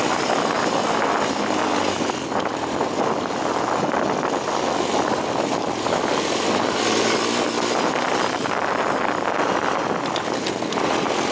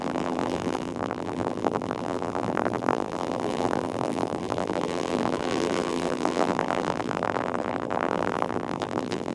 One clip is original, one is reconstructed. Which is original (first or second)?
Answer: first